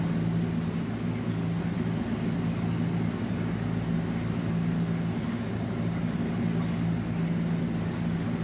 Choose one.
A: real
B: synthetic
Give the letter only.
A